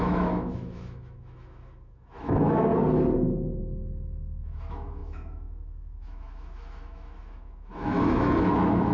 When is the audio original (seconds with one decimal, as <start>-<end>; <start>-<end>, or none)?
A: 2.7-3.6